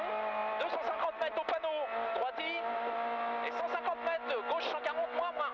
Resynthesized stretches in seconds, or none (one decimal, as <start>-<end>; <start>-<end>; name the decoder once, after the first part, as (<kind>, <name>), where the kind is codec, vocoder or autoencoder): none